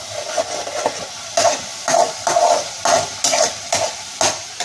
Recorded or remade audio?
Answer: recorded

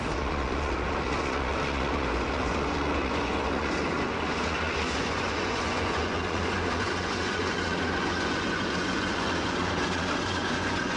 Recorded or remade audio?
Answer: remade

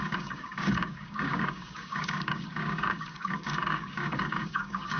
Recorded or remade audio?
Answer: remade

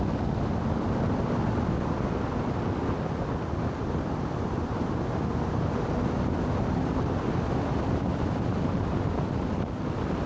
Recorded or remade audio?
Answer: recorded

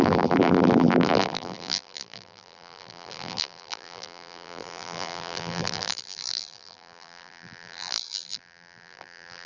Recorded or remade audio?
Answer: remade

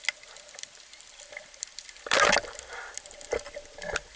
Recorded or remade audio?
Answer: recorded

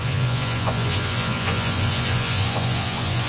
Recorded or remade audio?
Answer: remade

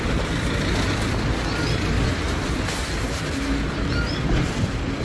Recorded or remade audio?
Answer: recorded